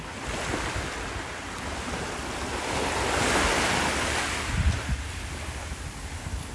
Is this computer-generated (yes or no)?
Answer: no